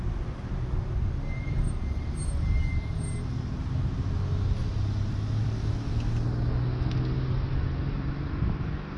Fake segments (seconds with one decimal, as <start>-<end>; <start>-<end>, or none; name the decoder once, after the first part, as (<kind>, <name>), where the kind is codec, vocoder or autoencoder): none